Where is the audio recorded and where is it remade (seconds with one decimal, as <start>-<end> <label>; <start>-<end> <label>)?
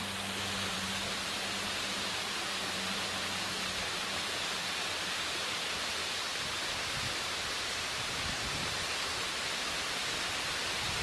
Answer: 0.0-0.7 recorded; 0.7-6.0 remade; 6.0-7.2 recorded; 7.2-11.0 remade